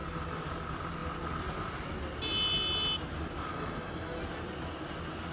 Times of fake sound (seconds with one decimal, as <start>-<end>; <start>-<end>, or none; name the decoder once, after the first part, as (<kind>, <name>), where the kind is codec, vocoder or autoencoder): 3.5-4.2 (autoencoder, DAC-VAE)